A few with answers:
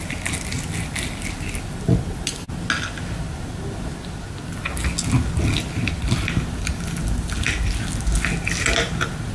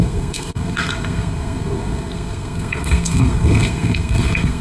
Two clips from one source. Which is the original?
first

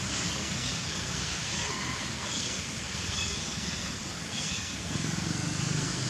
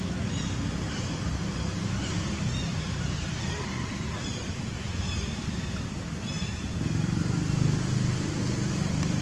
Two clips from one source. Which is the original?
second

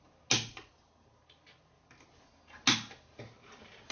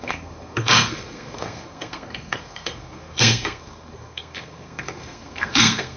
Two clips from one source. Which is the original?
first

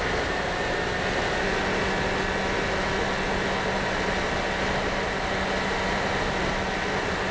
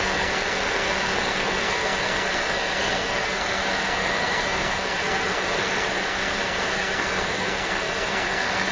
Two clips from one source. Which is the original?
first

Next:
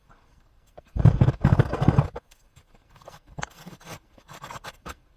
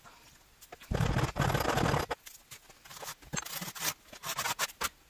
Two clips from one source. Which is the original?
second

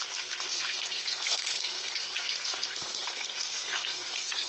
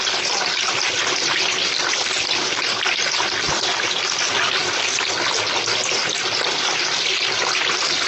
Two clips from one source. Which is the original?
second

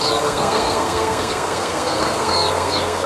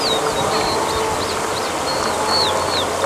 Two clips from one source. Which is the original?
second